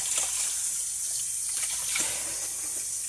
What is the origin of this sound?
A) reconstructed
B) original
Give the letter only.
B